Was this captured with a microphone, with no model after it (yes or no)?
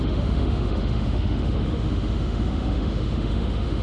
no